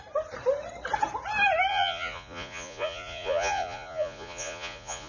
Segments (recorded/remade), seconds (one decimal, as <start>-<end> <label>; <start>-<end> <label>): 0.0-1.7 recorded; 1.7-5.1 remade